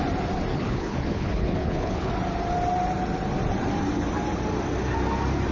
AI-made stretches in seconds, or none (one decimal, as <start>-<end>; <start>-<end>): 0.5-2.1